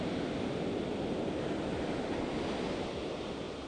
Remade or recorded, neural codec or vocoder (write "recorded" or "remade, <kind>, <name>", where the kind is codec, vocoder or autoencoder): recorded